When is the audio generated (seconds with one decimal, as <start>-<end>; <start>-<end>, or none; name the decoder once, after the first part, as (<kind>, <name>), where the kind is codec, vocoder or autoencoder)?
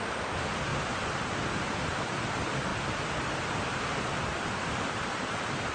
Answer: none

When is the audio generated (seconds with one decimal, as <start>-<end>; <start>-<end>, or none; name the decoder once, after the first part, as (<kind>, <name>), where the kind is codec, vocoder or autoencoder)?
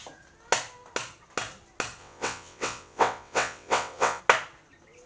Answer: 2.0-4.2 (vocoder, WaveNeXt)